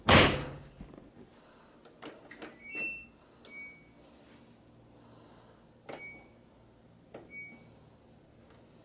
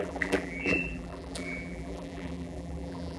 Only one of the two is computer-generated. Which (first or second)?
second